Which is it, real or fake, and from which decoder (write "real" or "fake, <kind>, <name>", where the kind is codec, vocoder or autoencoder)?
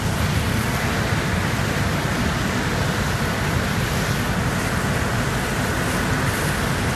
real